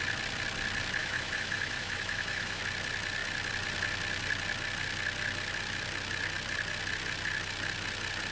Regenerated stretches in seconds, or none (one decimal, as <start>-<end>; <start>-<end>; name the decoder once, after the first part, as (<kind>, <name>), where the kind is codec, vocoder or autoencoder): 1.0-2.6 (autoencoder, DAC-VAE)